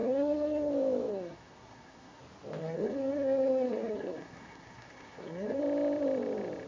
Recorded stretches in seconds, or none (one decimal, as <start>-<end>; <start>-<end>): 0.7-1.1; 2.2-2.6; 5.6-6.7